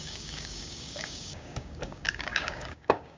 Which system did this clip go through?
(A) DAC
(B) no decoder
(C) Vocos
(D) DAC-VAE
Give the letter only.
A